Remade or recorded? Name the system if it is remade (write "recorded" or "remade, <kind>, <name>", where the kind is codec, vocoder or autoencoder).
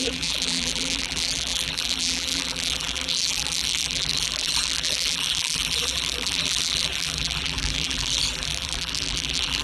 remade, vocoder, BigVGAN v2